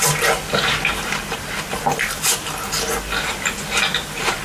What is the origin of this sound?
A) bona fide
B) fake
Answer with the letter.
A